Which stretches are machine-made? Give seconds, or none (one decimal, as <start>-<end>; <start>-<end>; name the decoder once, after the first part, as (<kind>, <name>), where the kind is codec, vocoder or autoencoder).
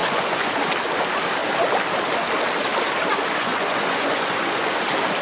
0.0-0.5 (vocoder, Vocos); 3.4-4.8